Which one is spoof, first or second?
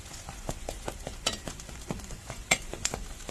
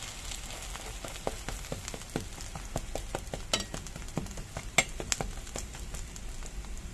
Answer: first